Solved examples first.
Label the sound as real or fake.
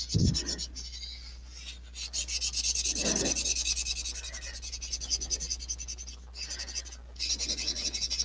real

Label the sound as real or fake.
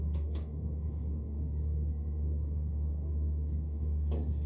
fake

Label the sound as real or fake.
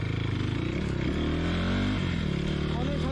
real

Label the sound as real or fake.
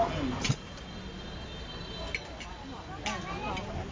real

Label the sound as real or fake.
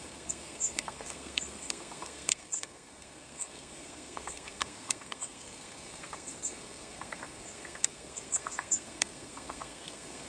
fake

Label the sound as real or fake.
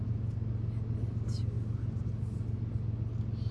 real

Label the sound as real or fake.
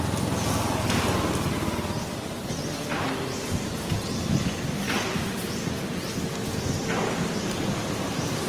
real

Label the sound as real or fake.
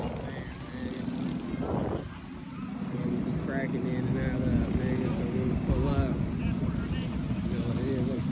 real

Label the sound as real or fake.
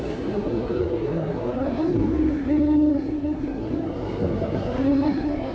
fake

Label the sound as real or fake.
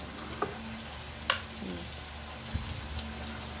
real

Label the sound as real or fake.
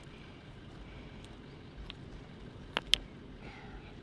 real